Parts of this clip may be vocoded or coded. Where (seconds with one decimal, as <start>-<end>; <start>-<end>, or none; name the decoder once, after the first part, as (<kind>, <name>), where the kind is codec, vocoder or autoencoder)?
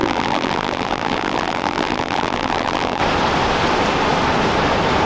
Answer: 0.0-3.0 (vocoder, BigVGAN v2)